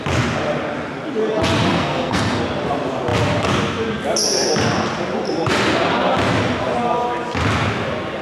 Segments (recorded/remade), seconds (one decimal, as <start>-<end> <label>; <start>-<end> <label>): 0.0-1.7 recorded; 1.7-2.4 remade; 2.4-8.2 recorded